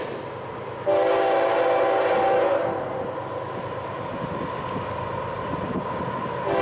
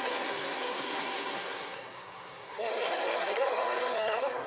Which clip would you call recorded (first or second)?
first